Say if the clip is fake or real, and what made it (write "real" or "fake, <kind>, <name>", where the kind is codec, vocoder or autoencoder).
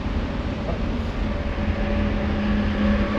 real